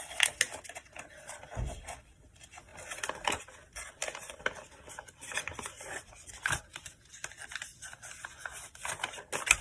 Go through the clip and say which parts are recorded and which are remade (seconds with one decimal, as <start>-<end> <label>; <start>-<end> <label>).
0.0-9.6 recorded